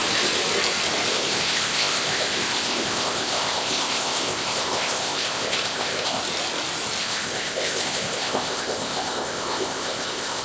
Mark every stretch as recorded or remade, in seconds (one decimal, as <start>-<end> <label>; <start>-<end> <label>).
0.0-1.1 recorded; 1.1-6.2 remade; 6.2-7.0 recorded; 7.0-10.4 remade